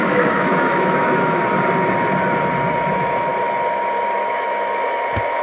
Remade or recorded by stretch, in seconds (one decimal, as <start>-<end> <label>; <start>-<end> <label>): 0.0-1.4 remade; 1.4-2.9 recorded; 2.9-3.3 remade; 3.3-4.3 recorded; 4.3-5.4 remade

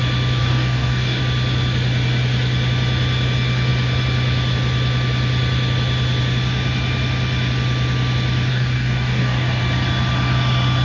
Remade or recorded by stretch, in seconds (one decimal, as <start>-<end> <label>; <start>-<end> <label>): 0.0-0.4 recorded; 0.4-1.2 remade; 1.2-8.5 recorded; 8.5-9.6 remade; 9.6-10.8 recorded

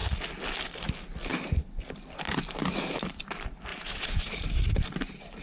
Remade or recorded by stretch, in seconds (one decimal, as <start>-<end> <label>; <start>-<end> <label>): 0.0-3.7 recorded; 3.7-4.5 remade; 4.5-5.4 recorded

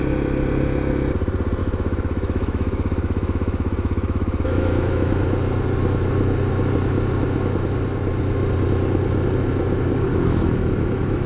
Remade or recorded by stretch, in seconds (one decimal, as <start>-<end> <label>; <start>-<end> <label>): 0.0-1.6 recorded; 1.6-5.2 remade; 5.2-10.1 recorded; 10.1-11.3 remade